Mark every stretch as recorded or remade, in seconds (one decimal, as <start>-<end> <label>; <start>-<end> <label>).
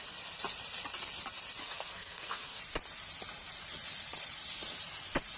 0.0-1.6 recorded; 1.6-2.6 remade; 2.6-5.4 recorded